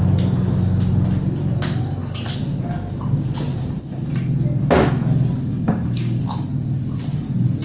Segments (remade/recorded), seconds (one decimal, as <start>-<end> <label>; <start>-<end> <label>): 0.0-5.5 recorded; 5.5-6.2 remade; 6.2-7.6 recorded